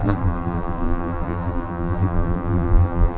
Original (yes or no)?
no